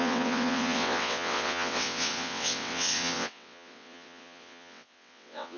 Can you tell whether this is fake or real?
fake